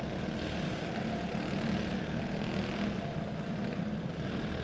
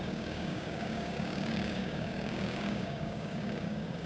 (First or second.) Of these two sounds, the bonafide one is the first